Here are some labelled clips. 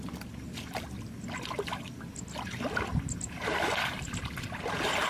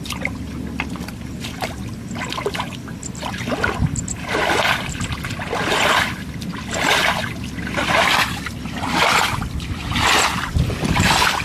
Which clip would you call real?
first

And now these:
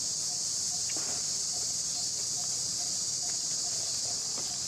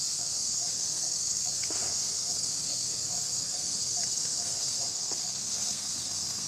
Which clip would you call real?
first